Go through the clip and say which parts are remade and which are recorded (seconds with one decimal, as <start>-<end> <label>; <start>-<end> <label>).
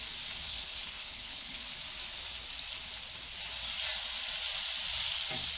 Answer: 0.0-0.5 recorded; 0.5-1.6 remade; 1.6-5.6 recorded